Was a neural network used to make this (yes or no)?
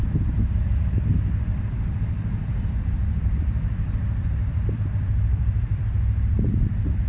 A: yes